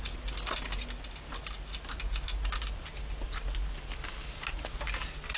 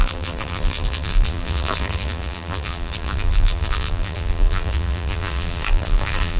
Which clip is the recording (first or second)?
first